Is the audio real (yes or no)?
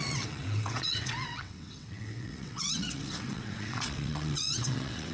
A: no